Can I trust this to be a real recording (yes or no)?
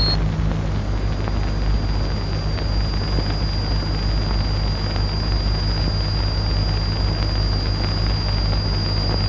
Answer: yes